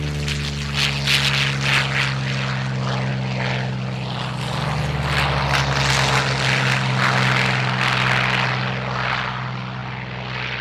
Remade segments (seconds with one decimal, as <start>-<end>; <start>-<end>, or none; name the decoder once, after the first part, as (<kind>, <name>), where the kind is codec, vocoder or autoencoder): none